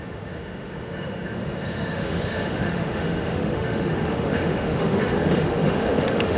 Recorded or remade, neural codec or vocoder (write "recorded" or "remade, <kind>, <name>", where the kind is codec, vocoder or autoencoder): remade, autoencoder, DAC-VAE